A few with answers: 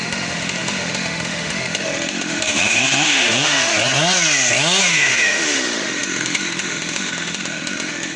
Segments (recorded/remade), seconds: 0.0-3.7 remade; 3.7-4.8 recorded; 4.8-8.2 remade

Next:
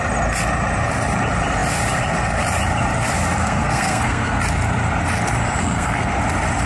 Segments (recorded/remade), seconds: 0.0-3.4 recorded; 3.4-4.4 remade; 4.4-5.6 recorded; 5.6-6.2 remade; 6.2-6.7 recorded

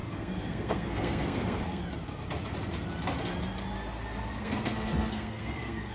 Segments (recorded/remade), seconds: 0.0-1.8 remade; 1.8-4.4 recorded; 4.4-5.9 remade

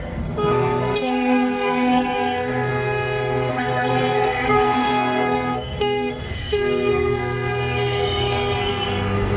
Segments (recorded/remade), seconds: 0.0-2.7 remade; 2.7-3.5 recorded; 3.5-9.4 remade

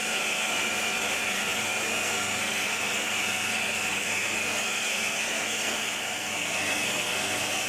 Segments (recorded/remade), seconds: 0.0-7.7 remade

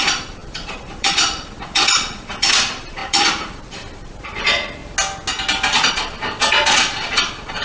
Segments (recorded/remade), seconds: 0.0-4.8 remade; 4.8-5.9 recorded; 5.9-7.6 remade

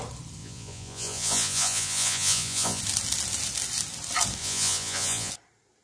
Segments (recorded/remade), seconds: 0.0-0.4 recorded; 0.4-2.8 remade; 2.8-4.4 recorded; 4.4-5.3 remade; 5.3-5.8 recorded